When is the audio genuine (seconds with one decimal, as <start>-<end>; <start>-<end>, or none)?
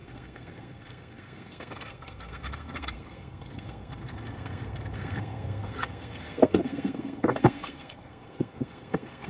none